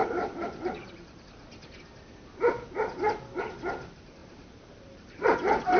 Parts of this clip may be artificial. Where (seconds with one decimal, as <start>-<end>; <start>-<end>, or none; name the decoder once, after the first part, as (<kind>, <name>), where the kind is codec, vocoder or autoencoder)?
0.0-1.2 (vocoder, BigVGAN v2); 4.2-5.8